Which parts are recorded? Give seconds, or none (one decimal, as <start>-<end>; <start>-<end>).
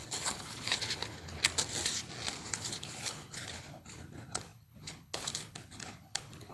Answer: 1.4-2.5